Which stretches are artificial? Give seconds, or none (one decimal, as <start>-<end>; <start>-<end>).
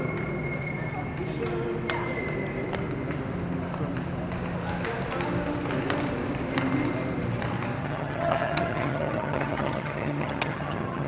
7.8-11.1